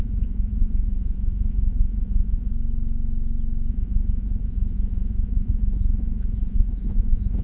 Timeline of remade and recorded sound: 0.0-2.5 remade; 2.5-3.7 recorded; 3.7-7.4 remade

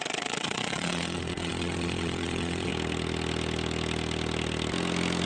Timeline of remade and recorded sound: 0.0-2.7 remade; 2.7-5.3 recorded

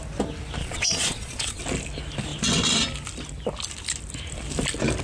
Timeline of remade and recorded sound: 0.0-0.6 recorded; 0.6-1.6 remade; 1.6-5.0 recorded

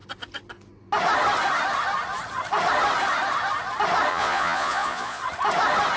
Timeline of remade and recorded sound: 0.0-4.1 recorded; 4.1-5.2 remade; 5.2-6.0 recorded